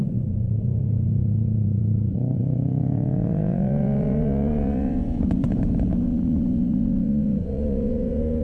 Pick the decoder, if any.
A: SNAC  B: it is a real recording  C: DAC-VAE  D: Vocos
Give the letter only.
D